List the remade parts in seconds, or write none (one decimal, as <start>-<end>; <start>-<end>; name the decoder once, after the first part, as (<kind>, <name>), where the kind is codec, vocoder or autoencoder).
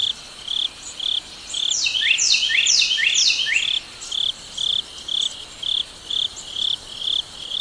0.0-4.7 (vocoder, BigVGAN v2); 6.1-7.6